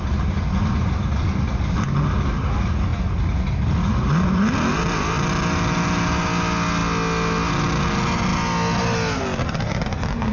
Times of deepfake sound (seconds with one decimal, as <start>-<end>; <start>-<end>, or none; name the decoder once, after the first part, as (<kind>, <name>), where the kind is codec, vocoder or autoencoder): none